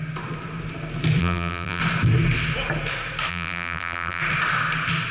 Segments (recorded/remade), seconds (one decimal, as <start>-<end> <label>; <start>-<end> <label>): 0.0-1.2 recorded; 1.2-1.8 remade; 1.8-3.3 recorded; 3.3-4.2 remade; 4.2-5.1 recorded